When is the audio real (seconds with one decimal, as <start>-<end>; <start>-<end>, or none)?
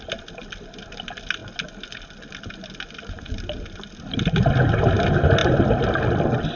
0.0-6.6